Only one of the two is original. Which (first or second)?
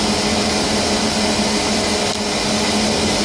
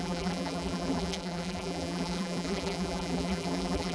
first